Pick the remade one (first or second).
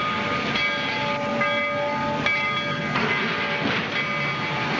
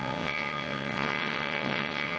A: second